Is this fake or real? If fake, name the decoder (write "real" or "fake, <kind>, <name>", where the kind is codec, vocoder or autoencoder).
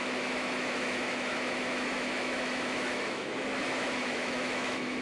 fake, autoencoder, DAC-VAE